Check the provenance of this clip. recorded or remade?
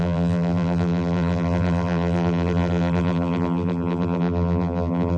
remade